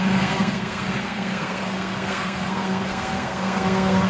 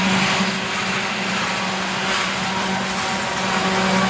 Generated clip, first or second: first